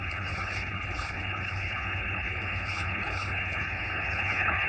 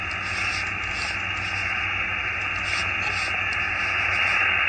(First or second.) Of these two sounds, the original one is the second